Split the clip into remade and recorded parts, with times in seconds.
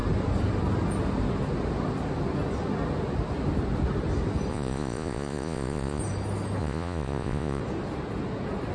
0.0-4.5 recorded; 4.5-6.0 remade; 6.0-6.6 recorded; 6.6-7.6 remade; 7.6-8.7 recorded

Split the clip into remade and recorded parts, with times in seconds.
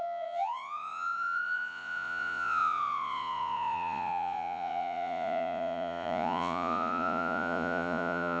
0.0-8.4 remade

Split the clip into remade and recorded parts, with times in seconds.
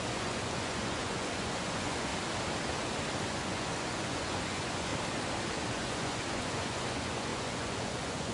0.0-2.1 remade; 2.1-3.2 recorded; 3.2-4.9 remade; 4.9-5.7 recorded; 5.7-8.3 remade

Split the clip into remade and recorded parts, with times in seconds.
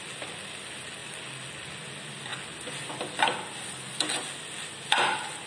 0.0-5.5 recorded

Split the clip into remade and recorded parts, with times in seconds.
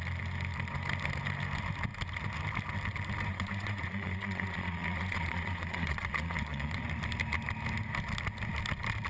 0.0-3.3 recorded; 3.3-6.8 remade; 6.8-9.1 recorded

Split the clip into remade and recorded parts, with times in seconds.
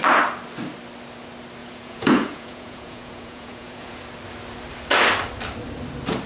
0.0-1.6 recorded; 1.6-4.0 remade; 4.0-6.3 recorded